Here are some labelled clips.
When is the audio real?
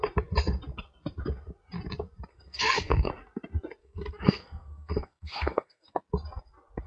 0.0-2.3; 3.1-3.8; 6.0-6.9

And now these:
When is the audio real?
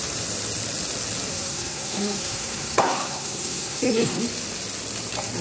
0.0-1.3; 4.2-5.4